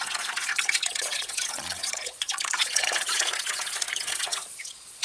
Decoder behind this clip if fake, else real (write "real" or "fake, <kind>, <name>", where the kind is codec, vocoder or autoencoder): fake, vocoder, Vocos